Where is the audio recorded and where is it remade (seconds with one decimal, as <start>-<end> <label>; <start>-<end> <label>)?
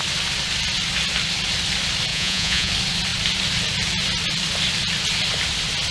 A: 0.0-2.1 recorded; 2.1-2.7 remade; 2.7-5.9 recorded